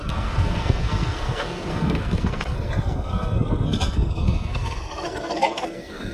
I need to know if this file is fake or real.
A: fake